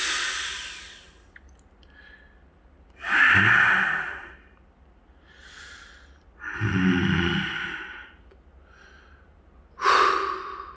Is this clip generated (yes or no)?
no